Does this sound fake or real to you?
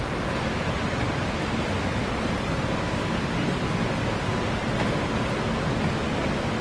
real